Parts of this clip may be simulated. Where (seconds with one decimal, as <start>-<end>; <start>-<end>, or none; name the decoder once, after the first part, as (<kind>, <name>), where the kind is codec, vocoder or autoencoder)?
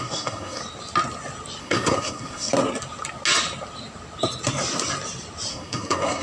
0.0-0.6 (codec, SNAC); 1.6-2.5; 5.5-6.2